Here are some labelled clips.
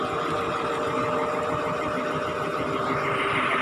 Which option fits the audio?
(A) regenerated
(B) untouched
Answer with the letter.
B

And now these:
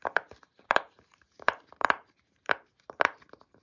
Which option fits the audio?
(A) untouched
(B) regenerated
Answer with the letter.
B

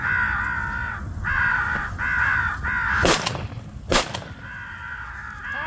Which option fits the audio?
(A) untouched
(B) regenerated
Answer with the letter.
A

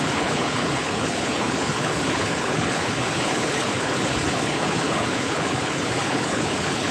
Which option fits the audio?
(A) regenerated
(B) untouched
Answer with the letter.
A